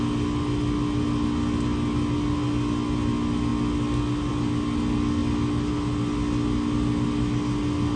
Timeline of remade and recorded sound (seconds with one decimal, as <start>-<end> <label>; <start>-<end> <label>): 0.0-8.0 recorded